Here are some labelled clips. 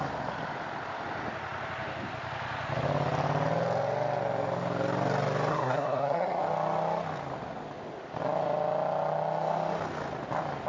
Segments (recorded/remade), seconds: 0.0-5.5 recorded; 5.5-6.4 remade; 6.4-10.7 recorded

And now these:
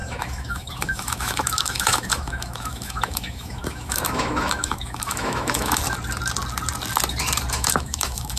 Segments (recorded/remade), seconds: 0.0-5.8 remade; 5.8-7.5 recorded; 7.5-8.4 remade

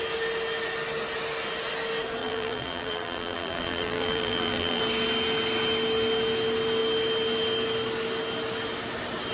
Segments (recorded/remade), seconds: 0.0-2.2 recorded; 2.2-4.8 remade; 4.8-9.3 recorded

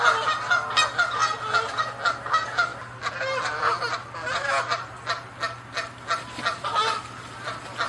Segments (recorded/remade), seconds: 0.0-7.9 recorded

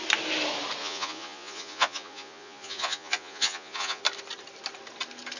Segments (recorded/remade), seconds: 0.0-0.8 recorded; 0.8-4.0 remade; 4.0-5.4 recorded